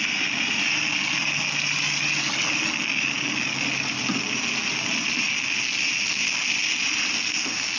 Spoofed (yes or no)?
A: no